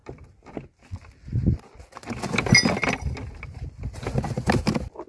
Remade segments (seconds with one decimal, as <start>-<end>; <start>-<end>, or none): none

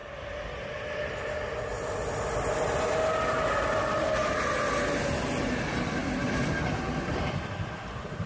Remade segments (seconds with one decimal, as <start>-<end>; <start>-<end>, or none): none